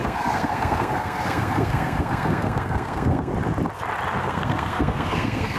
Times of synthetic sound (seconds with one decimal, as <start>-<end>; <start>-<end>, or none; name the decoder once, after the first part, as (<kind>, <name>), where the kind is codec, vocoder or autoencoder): 0.0-3.3 (codec, SNAC); 4.2-5.6